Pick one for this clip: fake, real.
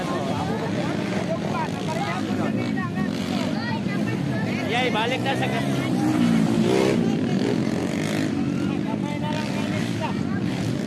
real